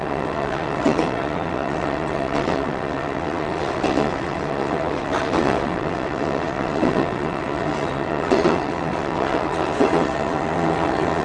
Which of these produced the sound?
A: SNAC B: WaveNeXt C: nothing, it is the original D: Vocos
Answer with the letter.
B